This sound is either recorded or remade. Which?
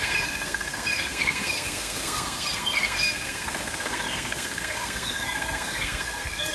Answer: remade